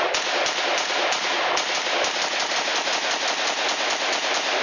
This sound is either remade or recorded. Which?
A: recorded